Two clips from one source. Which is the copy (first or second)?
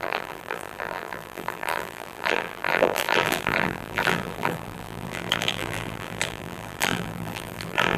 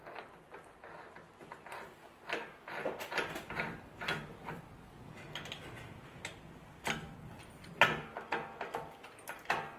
first